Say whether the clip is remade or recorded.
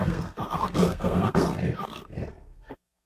remade